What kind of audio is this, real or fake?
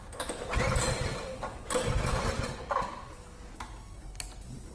real